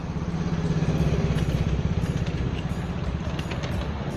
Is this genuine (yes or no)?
yes